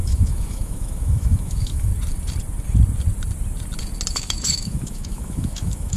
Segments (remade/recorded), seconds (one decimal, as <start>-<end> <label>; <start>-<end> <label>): 0.0-1.9 remade; 1.9-4.1 recorded; 4.1-6.0 remade